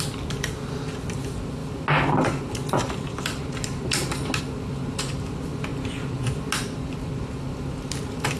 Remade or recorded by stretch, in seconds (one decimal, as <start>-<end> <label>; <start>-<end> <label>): 0.0-8.4 recorded